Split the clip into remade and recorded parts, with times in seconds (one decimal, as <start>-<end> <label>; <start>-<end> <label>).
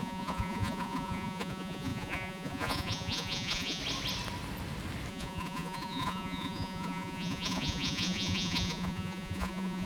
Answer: 0.0-3.8 remade; 3.8-5.1 recorded; 5.1-9.9 remade